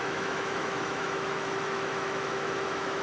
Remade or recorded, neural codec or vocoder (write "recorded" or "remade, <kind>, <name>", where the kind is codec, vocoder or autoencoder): remade, autoencoder, DAC-VAE